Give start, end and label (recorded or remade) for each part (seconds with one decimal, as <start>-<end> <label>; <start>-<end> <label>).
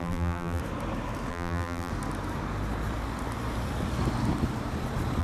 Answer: 0.0-0.6 remade; 0.6-1.3 recorded; 1.3-1.9 remade; 1.9-5.2 recorded